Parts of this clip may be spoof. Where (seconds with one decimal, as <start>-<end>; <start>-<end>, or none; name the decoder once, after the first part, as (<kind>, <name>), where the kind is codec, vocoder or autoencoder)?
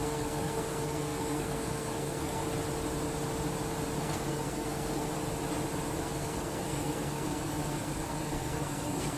0.0-2.4 (codec, SNAC); 4.0-5.1; 6.0-9.2